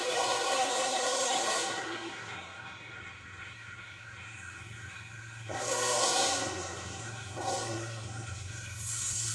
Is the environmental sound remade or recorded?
remade